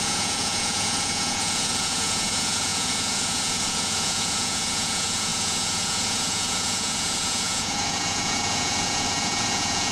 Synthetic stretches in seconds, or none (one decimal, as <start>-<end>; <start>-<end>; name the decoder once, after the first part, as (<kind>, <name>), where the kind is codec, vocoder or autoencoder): 0.0-9.9 (vocoder, Vocos)